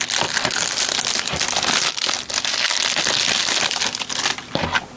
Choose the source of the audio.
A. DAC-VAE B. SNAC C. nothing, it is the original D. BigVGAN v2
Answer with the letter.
C